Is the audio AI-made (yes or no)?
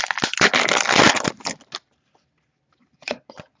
no